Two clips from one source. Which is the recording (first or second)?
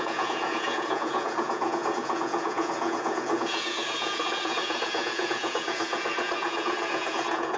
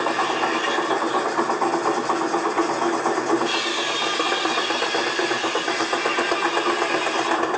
second